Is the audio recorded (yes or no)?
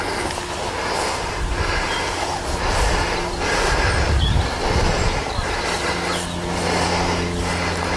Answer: yes